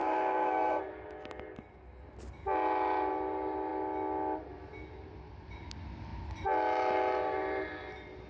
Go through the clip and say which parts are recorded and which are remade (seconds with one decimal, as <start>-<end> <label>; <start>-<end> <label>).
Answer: 0.0-0.8 remade; 0.8-8.3 recorded